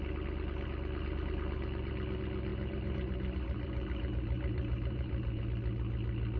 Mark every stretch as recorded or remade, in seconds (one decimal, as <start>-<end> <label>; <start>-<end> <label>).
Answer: 0.0-2.5 recorded; 2.5-5.4 remade; 5.4-6.4 recorded